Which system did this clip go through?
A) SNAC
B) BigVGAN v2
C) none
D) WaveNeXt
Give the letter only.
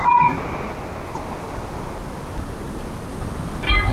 C